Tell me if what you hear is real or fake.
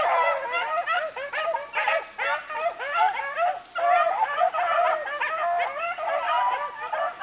real